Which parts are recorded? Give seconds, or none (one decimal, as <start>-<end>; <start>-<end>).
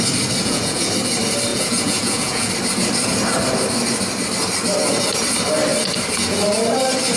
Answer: 0.0-0.4; 0.9-1.5; 2.5-7.2